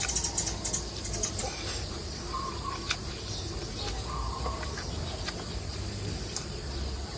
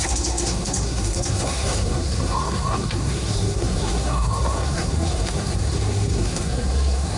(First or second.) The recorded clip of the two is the first